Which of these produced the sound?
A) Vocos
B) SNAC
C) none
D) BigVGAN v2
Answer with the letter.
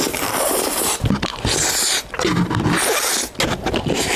C